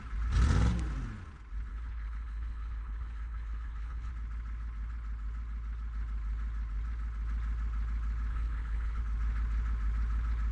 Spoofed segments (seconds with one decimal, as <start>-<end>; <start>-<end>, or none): 1.7-4.1; 8.3-9.0